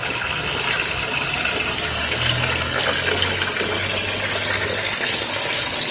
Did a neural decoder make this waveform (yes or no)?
no